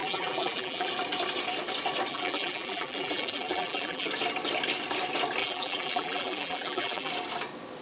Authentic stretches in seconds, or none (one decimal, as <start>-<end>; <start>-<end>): 0.9-2.1; 4.1-5.4; 7.1-7.8

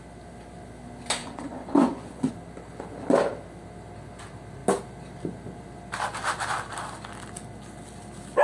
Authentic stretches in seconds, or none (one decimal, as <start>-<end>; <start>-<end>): 0.0-1.2; 2.3-8.4

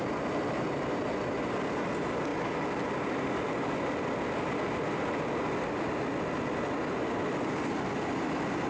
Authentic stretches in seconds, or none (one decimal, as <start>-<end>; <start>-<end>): 0.0-8.7

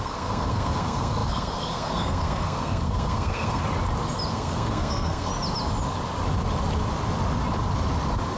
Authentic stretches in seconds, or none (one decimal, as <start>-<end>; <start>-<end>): 3.6-4.3; 5.3-8.4

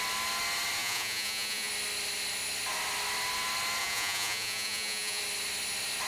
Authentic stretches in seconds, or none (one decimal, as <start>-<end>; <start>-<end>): 0.0-0.8; 1.7-3.8; 5.2-6.1

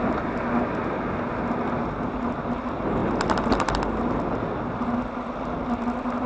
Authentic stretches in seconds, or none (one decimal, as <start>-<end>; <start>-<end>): 0.0-6.3